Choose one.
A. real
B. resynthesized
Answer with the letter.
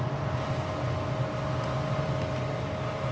A